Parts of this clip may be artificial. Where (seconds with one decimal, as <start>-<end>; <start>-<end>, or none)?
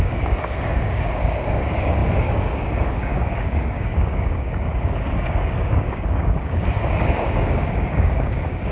0.0-8.7